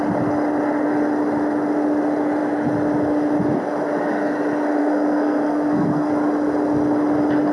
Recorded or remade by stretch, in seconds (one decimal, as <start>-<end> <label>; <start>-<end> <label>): 0.0-4.8 recorded; 4.8-6.1 remade; 6.1-7.5 recorded